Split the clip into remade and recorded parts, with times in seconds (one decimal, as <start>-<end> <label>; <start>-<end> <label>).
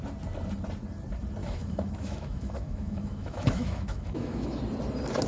0.0-1.4 recorded; 1.4-4.6 remade; 4.6-5.3 recorded